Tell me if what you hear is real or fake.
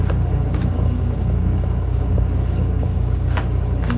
fake